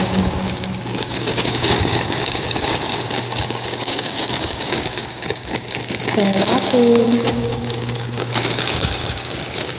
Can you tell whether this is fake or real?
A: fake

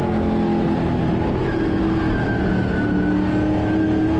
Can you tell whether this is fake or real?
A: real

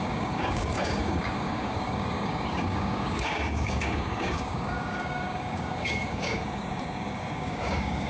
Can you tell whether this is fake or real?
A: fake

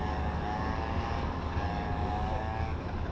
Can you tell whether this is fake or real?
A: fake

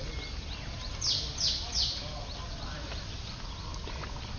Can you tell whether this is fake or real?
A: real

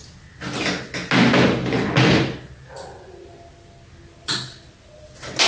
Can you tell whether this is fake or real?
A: real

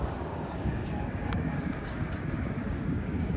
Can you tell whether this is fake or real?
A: fake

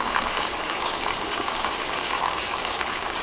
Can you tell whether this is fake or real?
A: fake